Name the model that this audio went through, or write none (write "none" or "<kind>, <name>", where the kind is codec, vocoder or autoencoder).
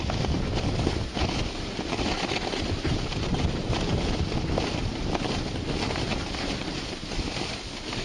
none